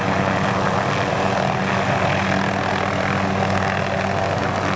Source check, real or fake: real